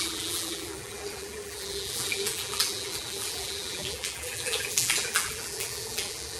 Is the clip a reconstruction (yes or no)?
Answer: yes